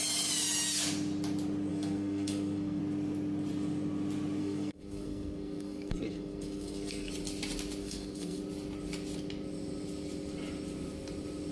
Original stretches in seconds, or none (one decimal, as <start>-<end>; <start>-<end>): 0.0-1.7; 2.8-4.4; 7.1-7.8; 8.4-11.5